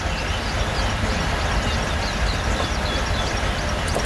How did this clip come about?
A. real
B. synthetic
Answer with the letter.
A